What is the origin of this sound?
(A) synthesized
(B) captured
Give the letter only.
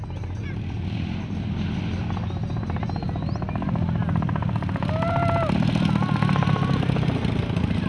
B